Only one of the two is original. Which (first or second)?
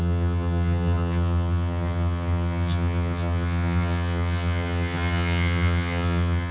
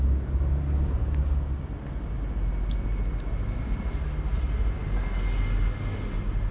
second